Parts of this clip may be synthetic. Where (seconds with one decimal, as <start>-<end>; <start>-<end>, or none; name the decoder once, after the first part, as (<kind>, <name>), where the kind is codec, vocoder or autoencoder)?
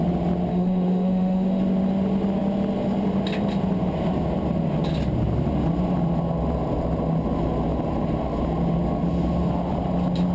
0.5-1.6 (autoencoder, DAC-VAE)